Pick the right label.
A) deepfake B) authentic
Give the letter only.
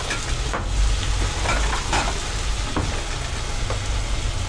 B